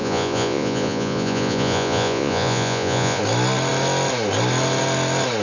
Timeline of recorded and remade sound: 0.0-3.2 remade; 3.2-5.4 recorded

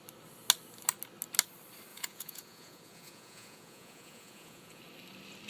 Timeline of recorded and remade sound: 0.0-1.9 recorded; 1.9-4.8 remade; 4.8-5.5 recorded

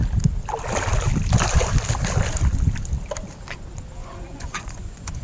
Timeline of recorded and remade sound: 0.0-4.0 recorded; 4.0-5.2 remade

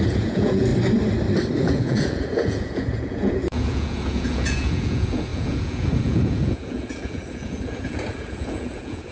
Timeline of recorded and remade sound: 0.0-0.7 remade; 0.7-1.6 recorded; 1.6-9.1 remade

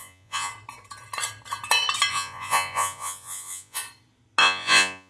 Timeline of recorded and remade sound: 0.0-0.5 remade; 0.5-2.1 recorded; 2.1-3.8 remade; 3.8-4.4 recorded; 4.4-5.1 remade

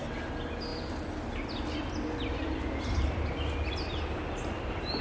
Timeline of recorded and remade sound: 0.0-5.0 recorded

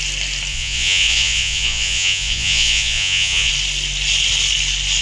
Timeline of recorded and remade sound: 0.0-0.5 recorded; 0.5-3.5 remade; 3.5-5.0 recorded